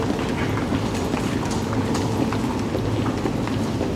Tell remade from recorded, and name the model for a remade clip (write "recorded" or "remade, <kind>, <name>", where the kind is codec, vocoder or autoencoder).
recorded